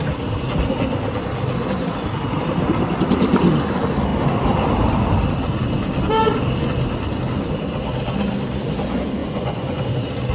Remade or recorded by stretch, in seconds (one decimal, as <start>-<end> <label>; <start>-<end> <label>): 0.0-9.2 recorded; 9.2-9.8 remade; 9.8-10.3 recorded

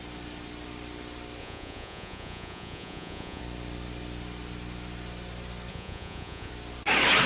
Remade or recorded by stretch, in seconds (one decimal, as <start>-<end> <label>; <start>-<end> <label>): 0.0-1.4 recorded; 1.4-3.4 remade; 3.4-5.7 recorded; 5.7-6.5 remade; 6.5-7.3 recorded

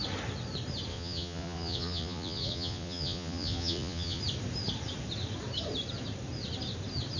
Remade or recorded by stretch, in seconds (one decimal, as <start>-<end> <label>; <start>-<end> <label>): 0.0-0.9 recorded; 0.9-4.2 remade; 4.2-7.2 recorded

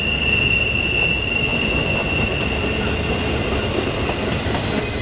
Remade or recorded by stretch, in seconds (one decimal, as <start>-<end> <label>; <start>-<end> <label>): 0.0-1.5 recorded; 1.5-2.2 remade; 2.2-5.0 recorded

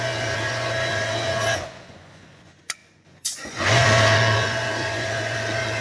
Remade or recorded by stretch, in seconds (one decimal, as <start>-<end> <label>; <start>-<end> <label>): 0.0-5.8 remade